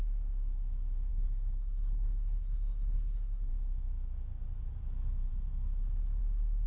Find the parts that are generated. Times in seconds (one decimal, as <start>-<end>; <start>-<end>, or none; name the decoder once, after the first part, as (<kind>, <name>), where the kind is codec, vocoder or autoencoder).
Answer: 1.1-3.5 (codec, SNAC)